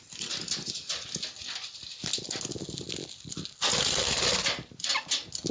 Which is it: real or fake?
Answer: real